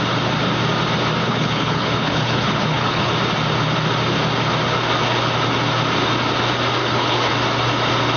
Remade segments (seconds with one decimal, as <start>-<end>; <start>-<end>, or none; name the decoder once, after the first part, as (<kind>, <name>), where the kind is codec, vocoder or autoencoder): 1.2-3.1 (codec, HILCodec); 6.8-7.3